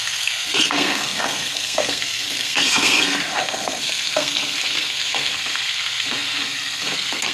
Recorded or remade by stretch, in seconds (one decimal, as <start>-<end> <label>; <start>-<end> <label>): 0.0-7.3 remade